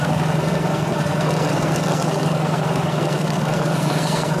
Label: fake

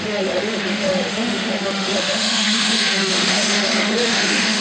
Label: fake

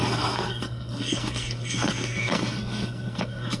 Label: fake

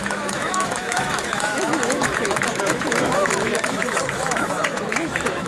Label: fake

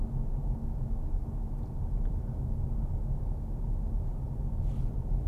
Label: real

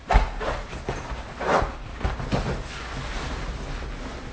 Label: real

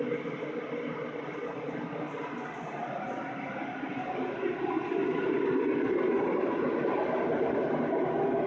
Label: real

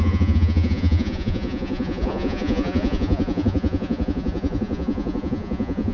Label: fake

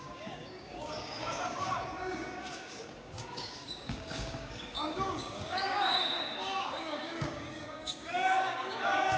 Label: fake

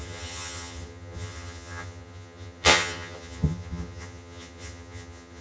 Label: fake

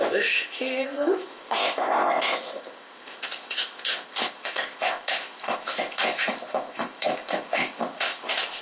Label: fake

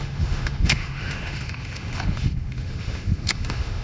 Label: fake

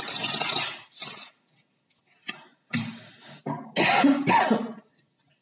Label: real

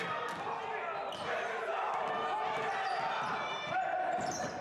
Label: real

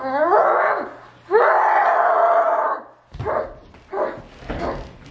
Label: real